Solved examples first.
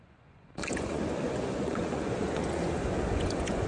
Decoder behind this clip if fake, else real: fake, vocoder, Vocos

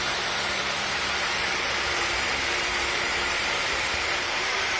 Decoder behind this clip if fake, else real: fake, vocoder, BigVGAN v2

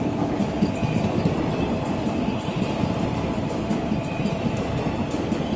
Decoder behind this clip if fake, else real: real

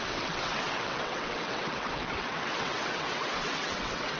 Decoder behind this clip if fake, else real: fake, vocoder, WaveNeXt